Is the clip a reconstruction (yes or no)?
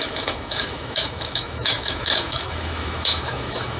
yes